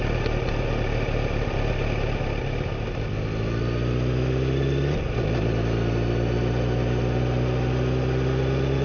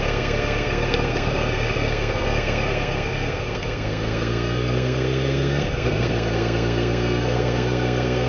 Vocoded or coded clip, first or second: second